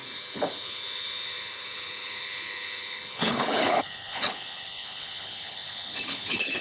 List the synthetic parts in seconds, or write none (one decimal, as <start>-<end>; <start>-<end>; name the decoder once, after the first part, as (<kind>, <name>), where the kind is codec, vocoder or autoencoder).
0.0-6.6 (codec, HILCodec)